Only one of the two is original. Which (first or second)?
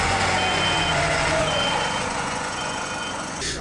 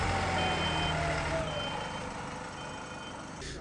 second